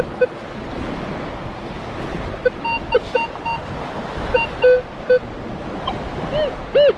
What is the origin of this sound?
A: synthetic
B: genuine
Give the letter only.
B